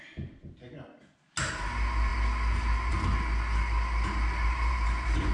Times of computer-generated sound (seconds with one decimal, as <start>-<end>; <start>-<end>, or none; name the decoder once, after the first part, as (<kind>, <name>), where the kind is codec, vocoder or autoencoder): 4.4-5.3 (vocoder, BigVGAN v2)